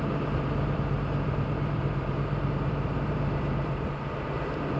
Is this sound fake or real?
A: fake